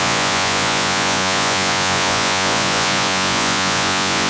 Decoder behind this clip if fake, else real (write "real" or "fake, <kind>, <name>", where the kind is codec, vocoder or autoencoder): fake, vocoder, Vocos